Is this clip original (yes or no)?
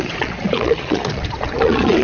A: no